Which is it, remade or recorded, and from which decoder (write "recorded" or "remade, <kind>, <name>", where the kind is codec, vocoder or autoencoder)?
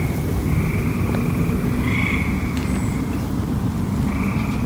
recorded